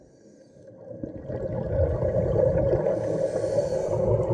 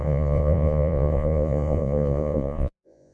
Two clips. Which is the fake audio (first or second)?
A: second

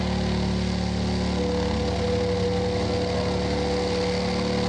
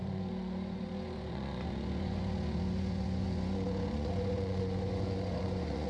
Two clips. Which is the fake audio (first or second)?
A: second